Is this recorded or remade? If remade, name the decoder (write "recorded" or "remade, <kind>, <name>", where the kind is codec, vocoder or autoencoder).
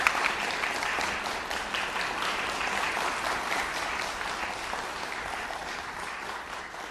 remade, vocoder, BigVGAN v2